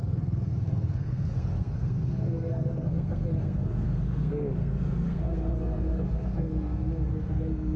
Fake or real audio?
fake